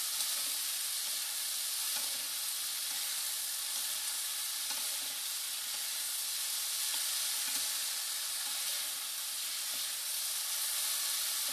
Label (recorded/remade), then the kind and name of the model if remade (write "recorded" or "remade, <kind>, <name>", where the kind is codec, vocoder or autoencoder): recorded